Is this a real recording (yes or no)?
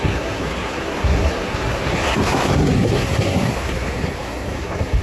no